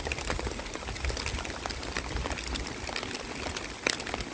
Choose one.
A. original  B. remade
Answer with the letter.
A